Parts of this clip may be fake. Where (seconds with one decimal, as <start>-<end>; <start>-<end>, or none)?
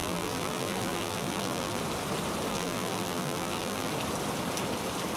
0.0-1.8; 2.5-3.9